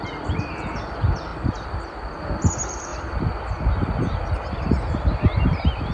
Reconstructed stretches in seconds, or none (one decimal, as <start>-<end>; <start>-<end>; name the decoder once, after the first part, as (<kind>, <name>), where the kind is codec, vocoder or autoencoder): none